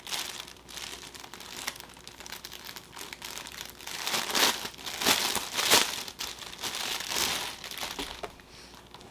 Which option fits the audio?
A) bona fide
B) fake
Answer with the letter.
A